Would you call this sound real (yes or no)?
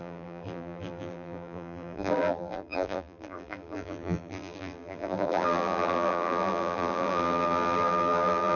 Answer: no